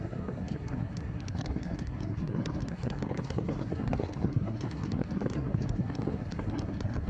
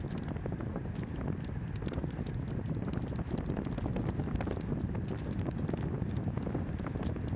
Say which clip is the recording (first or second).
second